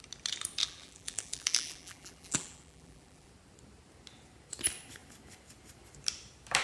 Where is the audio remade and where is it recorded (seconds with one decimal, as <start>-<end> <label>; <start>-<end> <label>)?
0.0-0.6 recorded; 0.6-3.3 remade; 3.3-6.6 recorded